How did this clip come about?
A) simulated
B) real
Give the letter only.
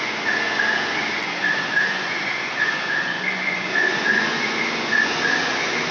A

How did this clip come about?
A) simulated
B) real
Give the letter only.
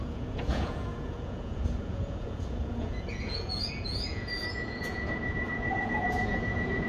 A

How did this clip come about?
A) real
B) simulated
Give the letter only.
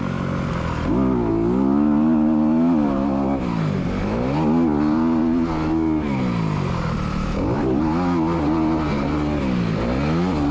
A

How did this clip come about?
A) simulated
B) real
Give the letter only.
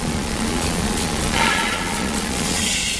A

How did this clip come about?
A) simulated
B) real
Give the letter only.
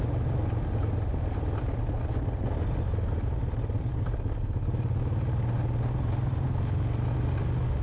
B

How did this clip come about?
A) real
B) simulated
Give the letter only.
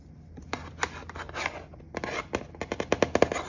A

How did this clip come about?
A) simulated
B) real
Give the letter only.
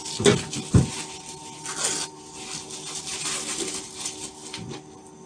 B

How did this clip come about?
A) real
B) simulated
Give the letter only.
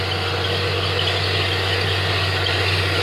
A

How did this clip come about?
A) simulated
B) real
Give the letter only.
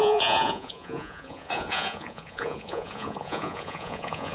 A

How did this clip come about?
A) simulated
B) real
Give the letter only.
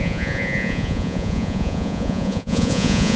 A